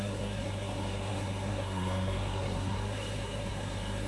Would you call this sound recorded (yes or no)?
no